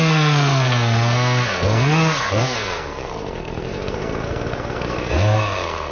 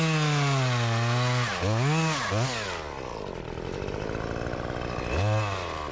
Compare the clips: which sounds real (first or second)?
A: second